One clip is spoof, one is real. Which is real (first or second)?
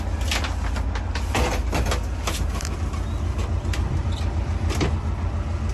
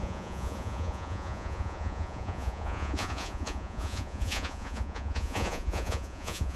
first